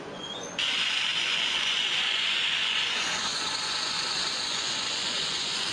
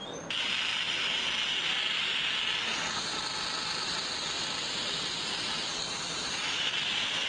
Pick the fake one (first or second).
first